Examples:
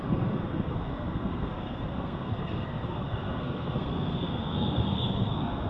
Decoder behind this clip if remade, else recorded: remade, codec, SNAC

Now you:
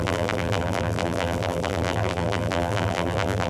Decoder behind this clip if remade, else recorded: remade, vocoder, BigVGAN v2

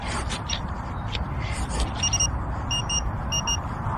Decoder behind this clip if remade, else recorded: recorded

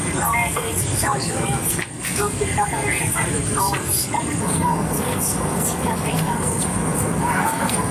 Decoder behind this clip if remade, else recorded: remade, codec, SNAC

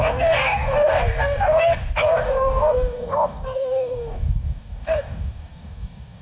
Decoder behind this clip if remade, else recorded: remade, codec, DAC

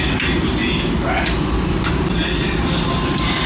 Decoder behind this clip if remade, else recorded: recorded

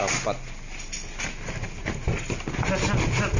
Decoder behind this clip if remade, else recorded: recorded